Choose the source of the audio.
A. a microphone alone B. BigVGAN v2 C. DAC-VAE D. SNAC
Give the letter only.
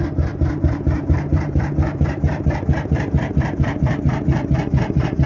B